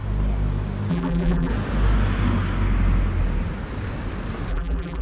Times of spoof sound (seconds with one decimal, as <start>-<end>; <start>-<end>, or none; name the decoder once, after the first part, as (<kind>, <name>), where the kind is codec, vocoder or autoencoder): 0.9-1.5 (vocoder, BigVGAN v2); 4.5-5.0